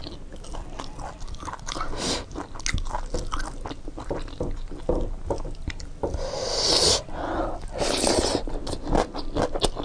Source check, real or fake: real